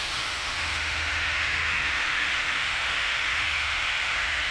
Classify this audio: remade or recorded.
remade